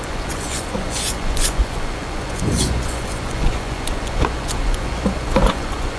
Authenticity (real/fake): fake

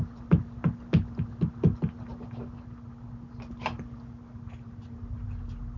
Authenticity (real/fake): real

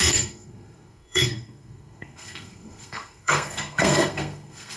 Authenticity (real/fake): fake